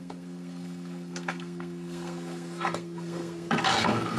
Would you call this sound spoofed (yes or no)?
yes